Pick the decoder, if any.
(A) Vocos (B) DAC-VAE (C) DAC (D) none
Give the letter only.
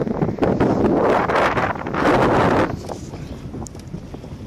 D